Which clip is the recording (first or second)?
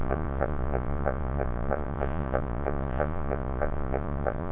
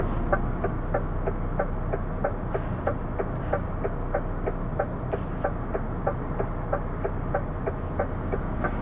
second